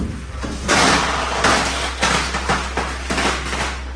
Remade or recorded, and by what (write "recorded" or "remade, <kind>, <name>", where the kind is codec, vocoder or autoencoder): recorded